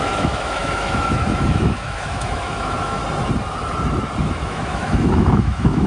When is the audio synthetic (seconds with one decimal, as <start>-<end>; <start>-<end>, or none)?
0.0-3.0; 4.2-5.9